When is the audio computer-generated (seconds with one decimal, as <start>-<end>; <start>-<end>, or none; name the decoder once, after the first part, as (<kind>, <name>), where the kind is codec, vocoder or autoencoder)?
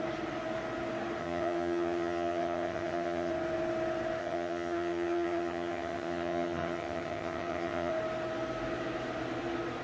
1.2-3.3 (vocoder, HiFi-GAN); 4.2-7.9